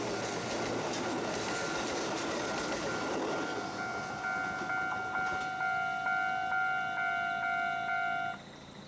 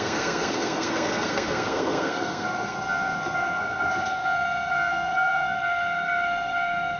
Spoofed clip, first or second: second